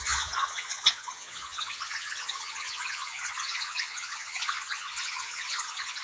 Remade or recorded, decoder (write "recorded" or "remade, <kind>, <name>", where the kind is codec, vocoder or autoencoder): remade, vocoder, Vocos